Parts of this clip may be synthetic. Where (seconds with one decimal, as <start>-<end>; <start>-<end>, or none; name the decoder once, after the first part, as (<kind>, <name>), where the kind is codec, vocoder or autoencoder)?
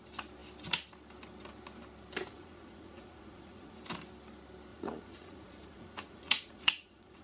2.3-3.8 (vocoder, Vocos); 4.7-7.2